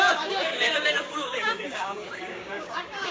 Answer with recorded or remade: remade